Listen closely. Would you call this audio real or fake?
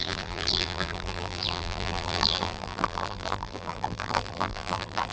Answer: fake